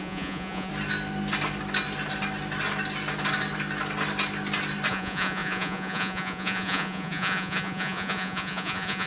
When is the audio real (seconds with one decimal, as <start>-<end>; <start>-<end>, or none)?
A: 0.7-4.9